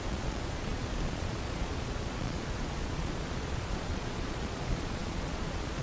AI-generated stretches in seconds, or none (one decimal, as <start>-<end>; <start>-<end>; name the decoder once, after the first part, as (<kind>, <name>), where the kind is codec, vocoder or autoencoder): 0.0-5.8 (vocoder, Vocos)